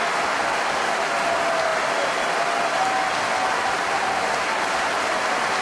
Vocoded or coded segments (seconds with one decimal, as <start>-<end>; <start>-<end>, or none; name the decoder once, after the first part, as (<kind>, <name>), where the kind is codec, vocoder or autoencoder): none